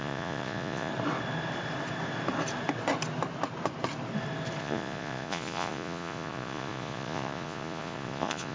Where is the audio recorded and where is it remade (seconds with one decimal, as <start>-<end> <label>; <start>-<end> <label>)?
0.0-0.9 remade; 0.9-4.6 recorded; 4.6-8.5 remade